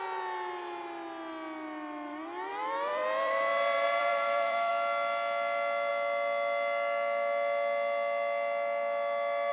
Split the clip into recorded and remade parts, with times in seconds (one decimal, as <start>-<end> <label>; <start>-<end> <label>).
0.0-2.5 recorded; 2.5-4.7 remade; 4.7-9.5 recorded